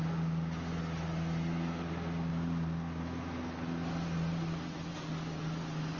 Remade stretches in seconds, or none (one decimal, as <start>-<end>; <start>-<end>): none